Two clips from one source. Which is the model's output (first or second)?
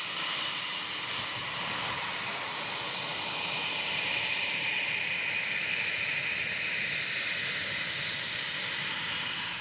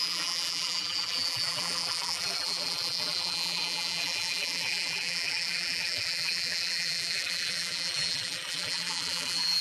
second